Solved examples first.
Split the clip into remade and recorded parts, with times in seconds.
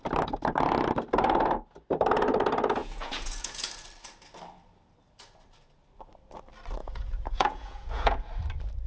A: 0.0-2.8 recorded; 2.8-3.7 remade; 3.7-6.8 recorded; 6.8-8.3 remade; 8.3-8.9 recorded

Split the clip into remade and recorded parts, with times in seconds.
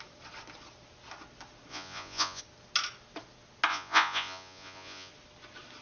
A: 0.0-1.7 recorded; 1.7-2.4 remade; 2.4-3.7 recorded; 3.7-5.1 remade; 5.1-5.8 recorded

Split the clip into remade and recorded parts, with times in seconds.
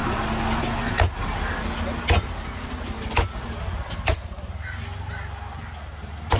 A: 0.0-6.4 recorded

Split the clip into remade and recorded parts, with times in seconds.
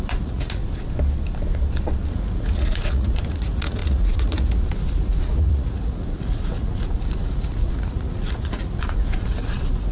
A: 0.0-0.6 remade; 0.6-2.1 recorded; 2.1-9.9 remade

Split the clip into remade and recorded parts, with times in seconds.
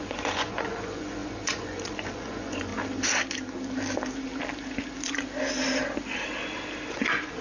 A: 0.0-2.7 remade; 2.7-6.9 recorded; 6.9-7.4 remade